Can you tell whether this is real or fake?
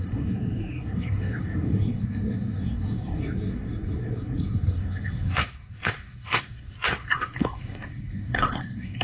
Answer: fake